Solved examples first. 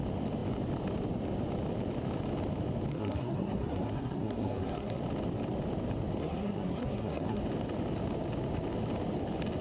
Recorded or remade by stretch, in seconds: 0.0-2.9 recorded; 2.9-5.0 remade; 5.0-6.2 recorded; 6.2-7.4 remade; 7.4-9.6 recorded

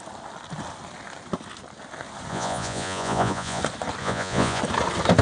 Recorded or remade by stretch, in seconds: 0.0-2.3 recorded; 2.3-3.6 remade; 3.6-4.0 recorded; 4.0-4.6 remade; 4.6-5.2 recorded

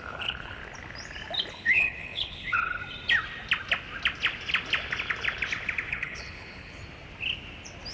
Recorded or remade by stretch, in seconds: 0.0-0.6 remade; 0.6-1.5 recorded; 1.5-2.8 remade; 2.8-5.9 recorded; 5.9-6.8 remade; 6.8-7.9 recorded

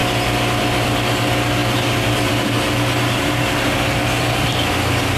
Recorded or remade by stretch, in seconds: 0.0-5.2 recorded

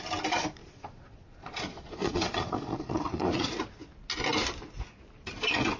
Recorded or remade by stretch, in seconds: 0.0-0.6 recorded; 0.6-3.9 remade; 3.9-5.8 recorded